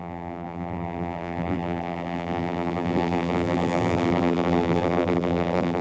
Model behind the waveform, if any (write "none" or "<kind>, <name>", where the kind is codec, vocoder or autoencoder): vocoder, BigVGAN v2